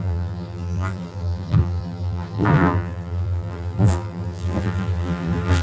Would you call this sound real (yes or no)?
no